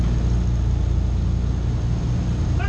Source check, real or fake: real